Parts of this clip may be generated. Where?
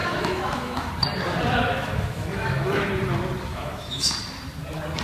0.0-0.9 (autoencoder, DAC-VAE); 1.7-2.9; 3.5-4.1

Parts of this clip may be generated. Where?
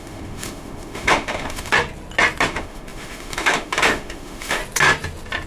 0.0-1.7 (autoencoder, DAC-VAE); 2.5-4.6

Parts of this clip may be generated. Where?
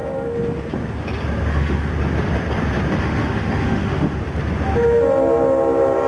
1.5-1.9 (autoencoder, DAC-VAE); 3.0-4.2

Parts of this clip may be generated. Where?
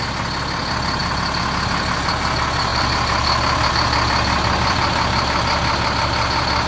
none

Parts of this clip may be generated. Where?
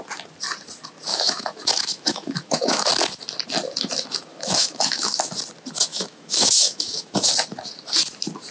1.1-2.9 (autoencoder, DAC-VAE); 4.3-5.3; 5.9-7.3